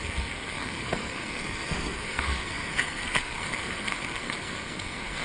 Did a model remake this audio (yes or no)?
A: yes